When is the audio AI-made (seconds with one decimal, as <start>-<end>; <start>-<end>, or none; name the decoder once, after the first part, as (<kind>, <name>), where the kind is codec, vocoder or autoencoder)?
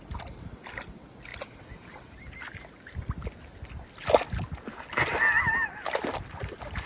none